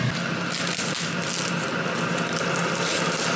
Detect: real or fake real